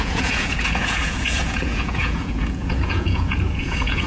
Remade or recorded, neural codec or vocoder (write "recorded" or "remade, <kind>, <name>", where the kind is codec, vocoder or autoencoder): remade, vocoder, Vocos